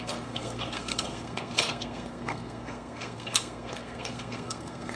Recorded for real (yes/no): no